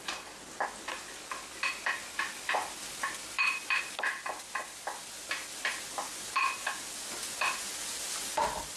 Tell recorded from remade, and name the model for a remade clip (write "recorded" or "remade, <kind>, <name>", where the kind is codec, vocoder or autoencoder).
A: recorded